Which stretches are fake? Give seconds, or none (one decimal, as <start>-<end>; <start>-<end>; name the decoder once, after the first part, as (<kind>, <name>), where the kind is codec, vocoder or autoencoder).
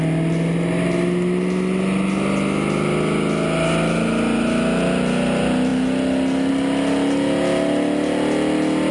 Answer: none